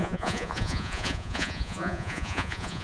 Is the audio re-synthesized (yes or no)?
yes